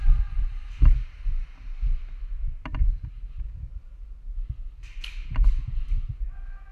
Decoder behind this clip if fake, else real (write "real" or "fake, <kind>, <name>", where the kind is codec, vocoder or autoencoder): real